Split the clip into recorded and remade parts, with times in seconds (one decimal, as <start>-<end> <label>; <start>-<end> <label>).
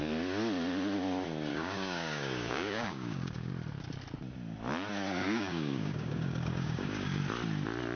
0.0-1.5 recorded; 1.5-3.5 remade; 3.5-5.2 recorded; 5.2-7.2 remade; 7.2-8.0 recorded